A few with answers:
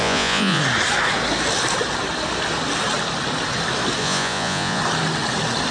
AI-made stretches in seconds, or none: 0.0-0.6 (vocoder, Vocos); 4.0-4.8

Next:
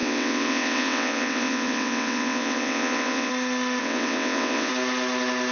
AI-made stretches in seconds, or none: 0.0-3.3 (vocoder, WaveNeXt); 3.8-4.7